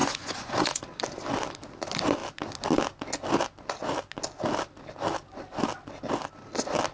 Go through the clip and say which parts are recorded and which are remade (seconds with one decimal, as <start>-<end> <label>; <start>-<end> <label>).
0.0-0.8 remade; 0.8-6.9 recorded